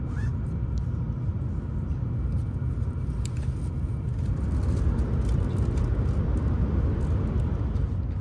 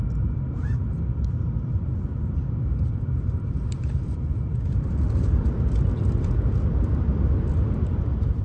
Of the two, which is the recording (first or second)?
first